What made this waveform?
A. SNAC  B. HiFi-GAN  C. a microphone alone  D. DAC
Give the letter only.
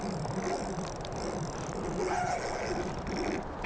C